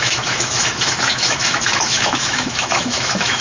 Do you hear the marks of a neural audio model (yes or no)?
yes